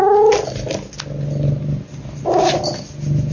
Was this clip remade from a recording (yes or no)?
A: no